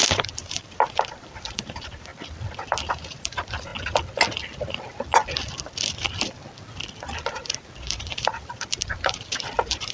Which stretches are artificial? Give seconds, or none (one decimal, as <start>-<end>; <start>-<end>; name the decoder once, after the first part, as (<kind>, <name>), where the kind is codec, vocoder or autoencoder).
0.0-2.1 (vocoder, BigVGAN v2); 2.9-3.7; 7.3-9.9